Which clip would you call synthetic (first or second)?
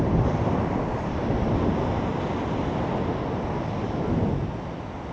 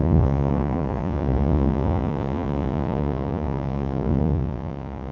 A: second